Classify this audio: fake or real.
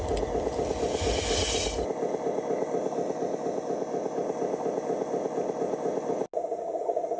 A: real